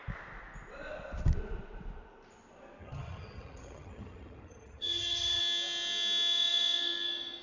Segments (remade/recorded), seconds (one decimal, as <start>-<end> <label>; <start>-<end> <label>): 0.0-2.8 recorded; 2.8-5.4 remade; 5.4-7.4 recorded